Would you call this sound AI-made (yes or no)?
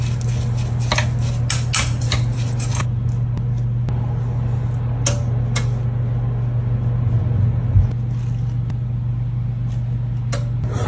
no